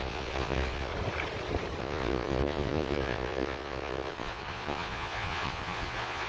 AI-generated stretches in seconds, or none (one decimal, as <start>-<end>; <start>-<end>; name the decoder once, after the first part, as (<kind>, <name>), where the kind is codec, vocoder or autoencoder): 0.0-0.9 (vocoder, Vocos); 1.8-6.3